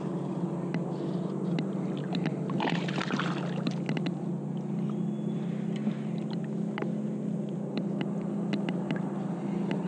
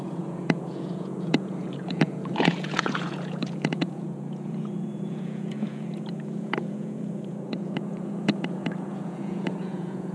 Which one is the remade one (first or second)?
second